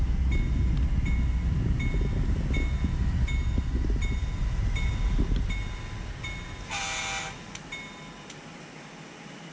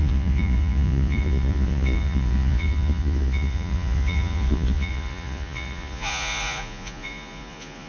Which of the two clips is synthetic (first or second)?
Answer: second